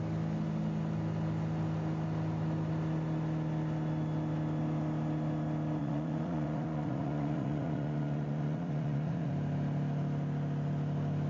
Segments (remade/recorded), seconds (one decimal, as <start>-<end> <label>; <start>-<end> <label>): 0.0-5.8 recorded; 5.8-9.3 remade; 9.3-11.3 recorded